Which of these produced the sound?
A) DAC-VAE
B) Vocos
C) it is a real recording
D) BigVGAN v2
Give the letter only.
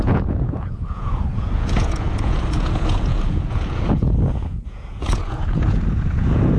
B